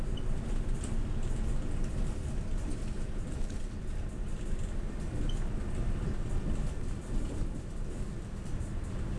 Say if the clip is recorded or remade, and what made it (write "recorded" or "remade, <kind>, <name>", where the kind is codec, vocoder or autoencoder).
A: recorded